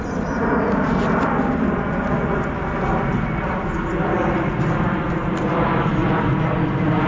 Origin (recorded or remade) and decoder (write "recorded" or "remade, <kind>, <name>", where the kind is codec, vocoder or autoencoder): recorded